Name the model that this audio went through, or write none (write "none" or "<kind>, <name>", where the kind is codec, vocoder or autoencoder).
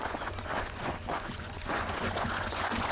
vocoder, Vocos